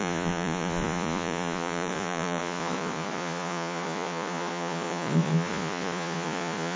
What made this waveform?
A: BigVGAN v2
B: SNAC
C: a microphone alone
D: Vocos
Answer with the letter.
D